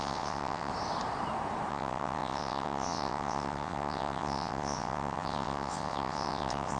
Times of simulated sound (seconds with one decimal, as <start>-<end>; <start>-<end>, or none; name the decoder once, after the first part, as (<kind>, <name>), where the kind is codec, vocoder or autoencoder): 0.0-0.7 (vocoder, WaveNeXt); 1.7-6.8